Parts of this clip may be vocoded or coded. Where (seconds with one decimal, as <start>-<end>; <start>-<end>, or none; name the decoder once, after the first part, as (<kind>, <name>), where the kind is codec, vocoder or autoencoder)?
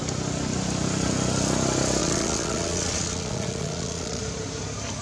2.0-4.2 (vocoder, Vocos)